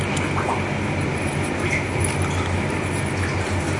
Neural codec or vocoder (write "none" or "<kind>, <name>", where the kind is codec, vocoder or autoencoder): none